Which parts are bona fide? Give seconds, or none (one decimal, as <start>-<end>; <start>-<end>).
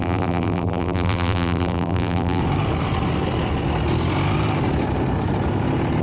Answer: 2.4-6.0